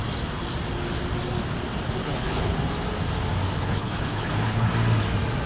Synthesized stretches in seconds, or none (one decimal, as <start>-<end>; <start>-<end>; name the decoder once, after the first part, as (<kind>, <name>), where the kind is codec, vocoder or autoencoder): 2.0-2.5 (codec, HILCodec); 3.6-4.7